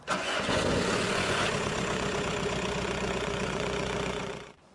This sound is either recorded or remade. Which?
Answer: remade